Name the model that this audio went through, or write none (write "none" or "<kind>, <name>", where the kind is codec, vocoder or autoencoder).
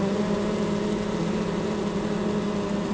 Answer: none